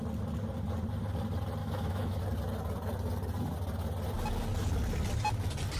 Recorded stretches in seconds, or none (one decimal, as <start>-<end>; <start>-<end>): 0.0-1.6; 2.2-5.8